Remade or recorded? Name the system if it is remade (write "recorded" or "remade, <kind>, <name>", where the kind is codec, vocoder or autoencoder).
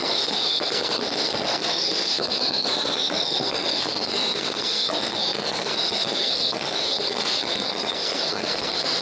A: remade, codec, SNAC